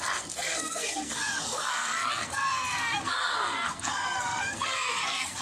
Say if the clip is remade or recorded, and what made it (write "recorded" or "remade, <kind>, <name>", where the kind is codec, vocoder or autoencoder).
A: remade, codec, SNAC